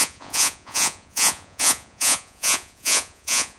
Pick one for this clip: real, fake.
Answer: fake